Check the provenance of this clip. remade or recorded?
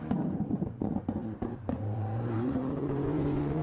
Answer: remade